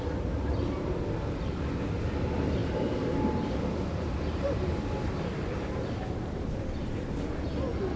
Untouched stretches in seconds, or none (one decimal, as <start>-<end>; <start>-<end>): 0.0-8.0